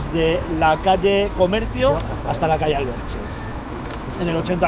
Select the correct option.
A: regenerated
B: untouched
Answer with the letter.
A